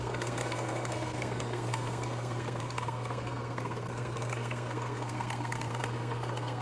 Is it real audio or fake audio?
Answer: fake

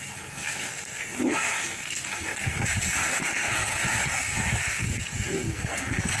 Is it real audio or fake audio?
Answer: fake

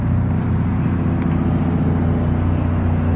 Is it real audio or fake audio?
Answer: real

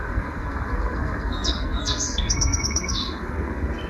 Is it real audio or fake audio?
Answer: fake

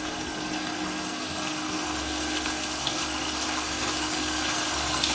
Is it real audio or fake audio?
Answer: fake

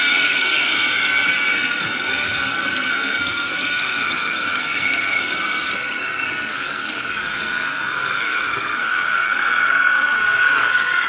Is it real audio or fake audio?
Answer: fake